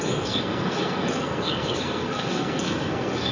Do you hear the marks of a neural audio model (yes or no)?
yes